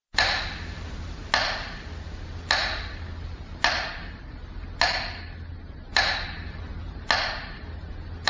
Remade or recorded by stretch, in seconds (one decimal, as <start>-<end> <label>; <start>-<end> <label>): 0.0-8.3 recorded